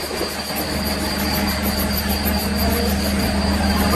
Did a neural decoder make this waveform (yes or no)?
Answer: no